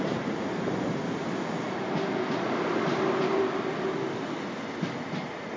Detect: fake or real real